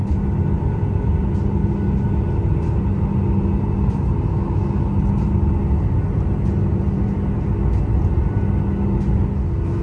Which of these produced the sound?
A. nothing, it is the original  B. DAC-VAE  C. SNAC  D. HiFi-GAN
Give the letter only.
A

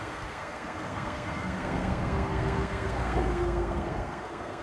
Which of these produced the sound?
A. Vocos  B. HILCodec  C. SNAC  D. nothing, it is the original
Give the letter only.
C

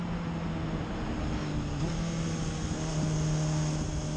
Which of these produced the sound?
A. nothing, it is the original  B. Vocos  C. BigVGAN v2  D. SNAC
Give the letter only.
A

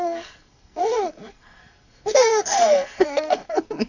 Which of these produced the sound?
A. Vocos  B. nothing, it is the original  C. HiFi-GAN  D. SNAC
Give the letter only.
D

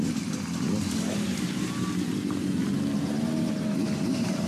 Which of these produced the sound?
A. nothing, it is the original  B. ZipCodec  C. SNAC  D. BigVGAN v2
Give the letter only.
A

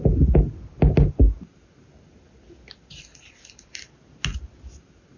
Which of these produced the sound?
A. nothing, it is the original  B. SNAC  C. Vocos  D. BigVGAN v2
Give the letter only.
A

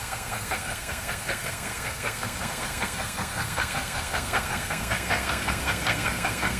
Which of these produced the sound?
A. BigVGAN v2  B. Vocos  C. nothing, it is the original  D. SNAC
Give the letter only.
D